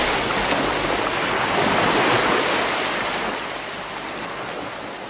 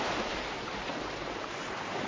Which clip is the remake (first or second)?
second